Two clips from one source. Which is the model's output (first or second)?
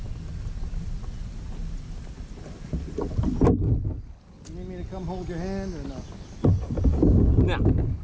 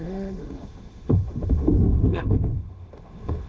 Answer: second